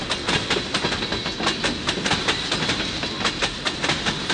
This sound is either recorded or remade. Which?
recorded